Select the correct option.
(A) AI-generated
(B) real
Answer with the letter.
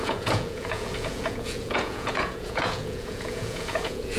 A